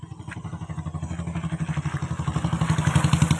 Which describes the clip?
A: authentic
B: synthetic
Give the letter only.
A